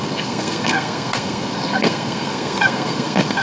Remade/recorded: remade